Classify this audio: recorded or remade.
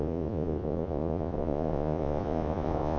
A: remade